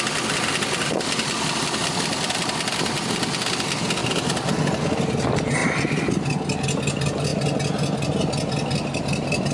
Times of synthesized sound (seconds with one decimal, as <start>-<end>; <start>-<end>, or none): 1.8-2.3; 5.6-6.1